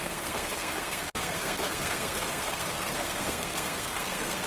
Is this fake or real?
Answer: fake